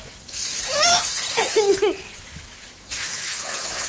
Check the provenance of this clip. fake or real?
fake